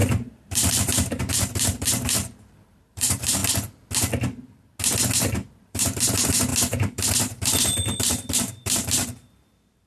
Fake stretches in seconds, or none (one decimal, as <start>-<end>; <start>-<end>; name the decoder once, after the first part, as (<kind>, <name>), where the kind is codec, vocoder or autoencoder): 0.0-3.4 (vocoder, BigVGAN v2); 5.5-9.9

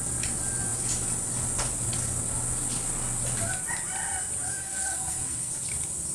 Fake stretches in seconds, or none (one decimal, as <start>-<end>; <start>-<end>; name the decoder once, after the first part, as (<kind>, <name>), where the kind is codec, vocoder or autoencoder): 4.5-5.5 (codec, SNAC)

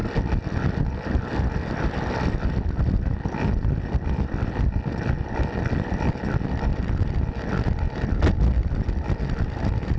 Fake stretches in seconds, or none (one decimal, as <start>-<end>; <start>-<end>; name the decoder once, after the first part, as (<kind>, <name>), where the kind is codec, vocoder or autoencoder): none